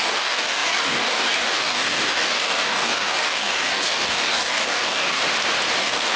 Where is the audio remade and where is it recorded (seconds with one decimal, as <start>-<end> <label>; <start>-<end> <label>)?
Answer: 0.0-5.2 remade; 5.2-5.8 recorded; 5.8-6.2 remade